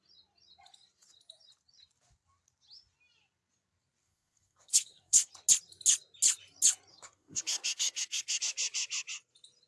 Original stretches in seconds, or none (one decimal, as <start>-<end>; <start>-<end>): 0.0-4.0; 5.3-6.9; 8.4-9.7